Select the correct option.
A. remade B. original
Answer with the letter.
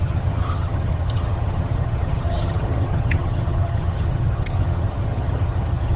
A